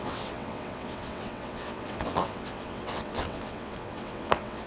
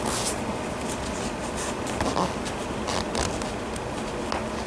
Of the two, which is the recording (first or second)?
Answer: second